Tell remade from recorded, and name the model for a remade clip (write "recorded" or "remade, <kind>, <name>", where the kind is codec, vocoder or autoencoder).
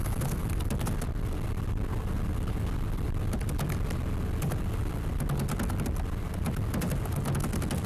recorded